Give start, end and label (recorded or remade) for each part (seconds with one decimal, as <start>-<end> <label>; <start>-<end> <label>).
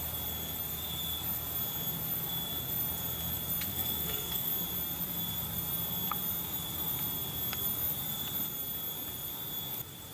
0.0-3.7 recorded; 3.7-4.5 remade; 4.5-10.1 recorded